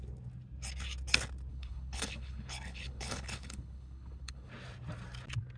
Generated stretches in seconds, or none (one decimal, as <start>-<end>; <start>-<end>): 1.5-4.5